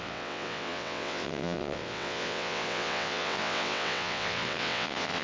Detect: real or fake fake